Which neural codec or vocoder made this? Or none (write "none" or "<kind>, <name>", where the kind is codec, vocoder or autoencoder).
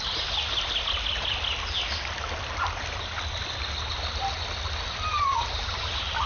none